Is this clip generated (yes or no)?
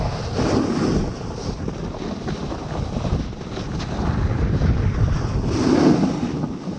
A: no